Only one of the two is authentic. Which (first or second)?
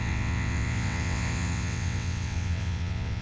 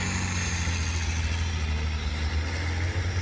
second